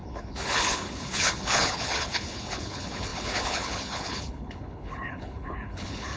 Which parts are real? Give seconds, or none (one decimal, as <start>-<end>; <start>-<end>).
none